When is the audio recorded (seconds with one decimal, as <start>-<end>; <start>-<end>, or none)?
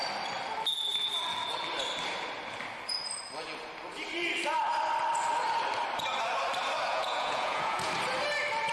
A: 0.0-6.9; 7.9-8.7